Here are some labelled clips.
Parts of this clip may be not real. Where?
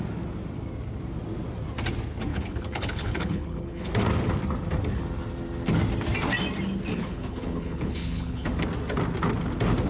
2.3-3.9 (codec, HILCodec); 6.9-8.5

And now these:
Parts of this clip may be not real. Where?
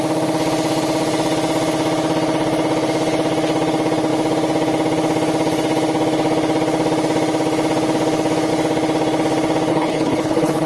9.7-10.7 (codec, HILCodec)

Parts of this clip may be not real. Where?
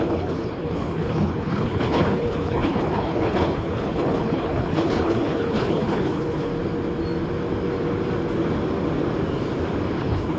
0.0-6.5 (codec, HILCodec); 10.0-10.4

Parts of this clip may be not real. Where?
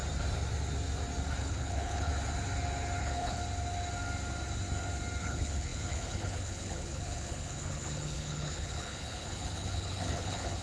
1.4-2.1 (codec, HILCodec); 3.0-3.4; 5.2-10.6